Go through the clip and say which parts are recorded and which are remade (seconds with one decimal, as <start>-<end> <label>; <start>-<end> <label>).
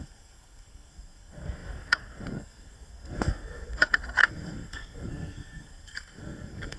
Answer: 0.0-6.8 remade